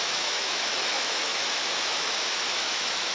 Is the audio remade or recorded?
remade